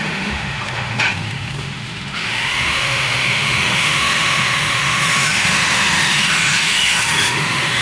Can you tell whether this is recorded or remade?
remade